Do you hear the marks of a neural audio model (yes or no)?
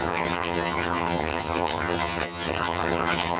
yes